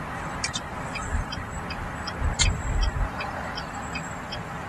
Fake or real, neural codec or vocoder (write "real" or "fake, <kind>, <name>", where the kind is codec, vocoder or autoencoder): fake, vocoder, BigVGAN v2